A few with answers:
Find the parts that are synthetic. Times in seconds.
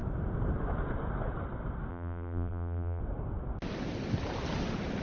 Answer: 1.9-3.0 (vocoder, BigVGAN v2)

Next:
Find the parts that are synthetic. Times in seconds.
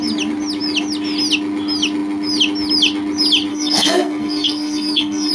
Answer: 3.5-5.3 (codec, SNAC)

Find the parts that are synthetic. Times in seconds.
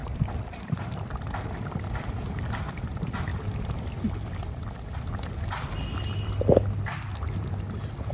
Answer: 0.0-2.1 (vocoder, BigVGAN v2)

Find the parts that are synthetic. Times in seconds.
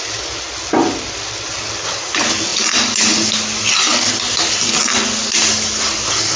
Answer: none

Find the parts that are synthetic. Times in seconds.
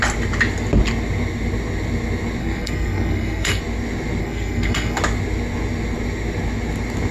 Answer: 2.4-3.6 (codec, SNAC); 4.2-5.0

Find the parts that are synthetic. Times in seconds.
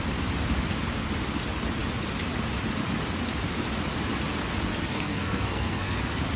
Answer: 4.7-6.0 (codec, SNAC)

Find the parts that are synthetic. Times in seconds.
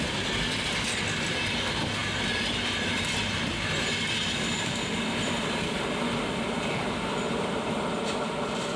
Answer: none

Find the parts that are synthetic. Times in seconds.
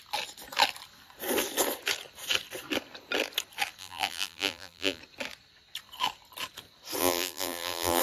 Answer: 3.8-5.0 (vocoder, BigVGAN v2); 7.0-8.0